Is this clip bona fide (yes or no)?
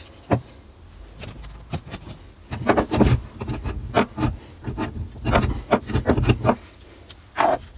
yes